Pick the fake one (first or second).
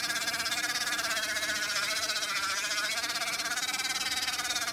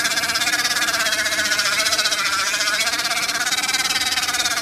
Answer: second